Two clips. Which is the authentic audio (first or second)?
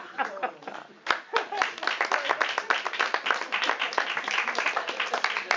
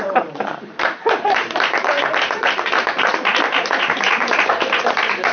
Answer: first